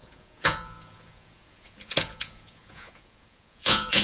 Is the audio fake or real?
fake